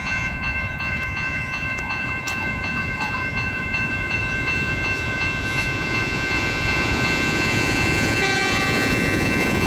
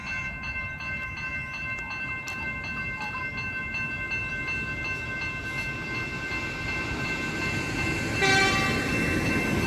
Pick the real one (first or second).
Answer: second